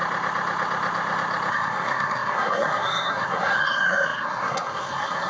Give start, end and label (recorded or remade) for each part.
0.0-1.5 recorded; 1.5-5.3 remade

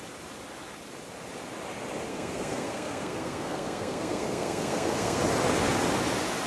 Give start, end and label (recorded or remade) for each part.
0.0-2.1 recorded; 2.1-5.2 remade; 5.2-6.5 recorded

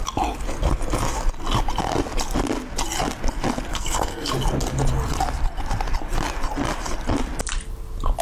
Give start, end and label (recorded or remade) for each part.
0.0-3.7 recorded; 3.7-4.3 remade; 4.3-8.2 recorded

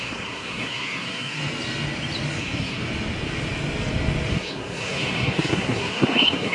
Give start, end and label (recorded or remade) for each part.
0.0-1.4 remade; 1.4-2.4 recorded; 2.4-2.8 remade; 2.8-4.3 recorded; 4.3-6.5 remade

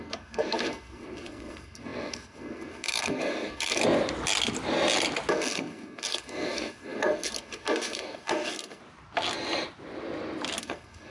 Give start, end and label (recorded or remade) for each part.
0.0-3.8 remade; 3.8-5.3 recorded; 5.3-8.8 remade; 8.8-10.6 recorded; 10.6-11.1 remade